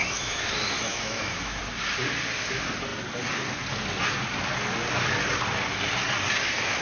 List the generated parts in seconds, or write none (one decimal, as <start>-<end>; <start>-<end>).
0.0-0.5; 0.9-1.6